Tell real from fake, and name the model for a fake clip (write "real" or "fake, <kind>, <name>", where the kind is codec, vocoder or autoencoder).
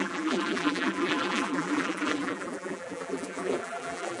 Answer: fake, vocoder, BigVGAN v2